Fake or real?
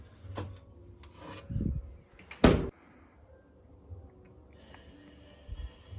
real